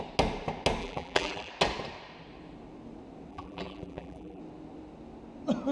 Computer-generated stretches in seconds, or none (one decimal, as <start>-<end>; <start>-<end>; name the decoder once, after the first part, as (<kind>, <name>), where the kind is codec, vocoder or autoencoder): 0.8-1.5 (vocoder, BigVGAN v2); 3.3-4.4